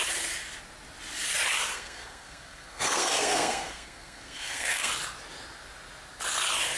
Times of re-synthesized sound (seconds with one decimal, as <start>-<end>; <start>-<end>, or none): 1.7-4.9